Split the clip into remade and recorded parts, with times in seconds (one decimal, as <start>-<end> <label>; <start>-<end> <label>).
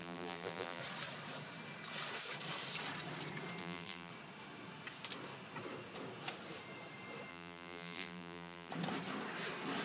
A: 0.0-0.8 remade; 0.8-3.6 recorded; 3.6-4.1 remade; 4.1-7.3 recorded; 7.3-8.7 remade; 8.7-9.8 recorded